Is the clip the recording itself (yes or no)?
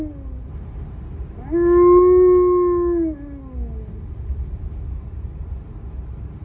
yes